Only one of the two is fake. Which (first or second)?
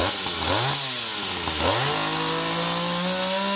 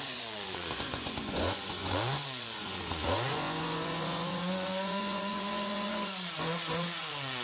second